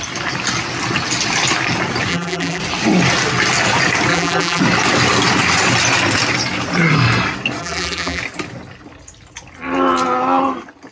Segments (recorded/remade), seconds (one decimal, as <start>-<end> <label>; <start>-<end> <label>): 0.0-2.1 recorded; 2.1-2.6 remade; 2.6-4.1 recorded; 4.1-4.6 remade; 4.6-7.6 recorded; 7.6-8.2 remade; 8.2-10.9 recorded